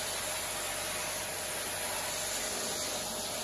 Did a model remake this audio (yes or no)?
no